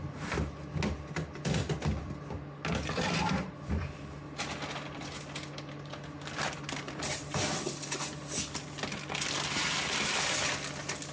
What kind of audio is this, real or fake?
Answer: real